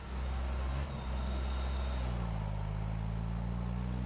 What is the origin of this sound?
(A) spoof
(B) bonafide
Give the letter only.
B